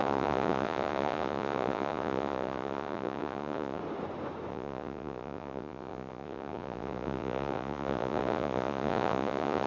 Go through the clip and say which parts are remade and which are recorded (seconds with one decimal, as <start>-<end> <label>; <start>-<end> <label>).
0.0-3.8 remade; 3.8-4.5 recorded; 4.5-9.7 remade